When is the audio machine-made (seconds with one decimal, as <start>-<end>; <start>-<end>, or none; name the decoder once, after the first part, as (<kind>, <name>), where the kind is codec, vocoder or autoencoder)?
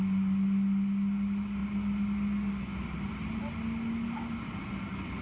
none